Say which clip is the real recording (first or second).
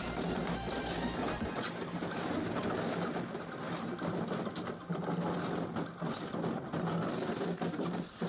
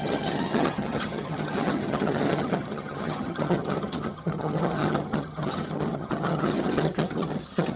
first